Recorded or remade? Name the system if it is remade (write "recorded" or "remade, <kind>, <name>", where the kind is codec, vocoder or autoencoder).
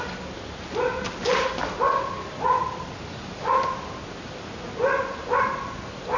recorded